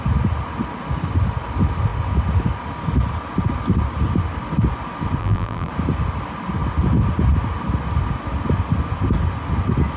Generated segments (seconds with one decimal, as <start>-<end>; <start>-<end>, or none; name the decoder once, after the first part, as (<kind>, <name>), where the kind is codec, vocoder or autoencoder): 5.2-5.7 (vocoder, BigVGAN v2)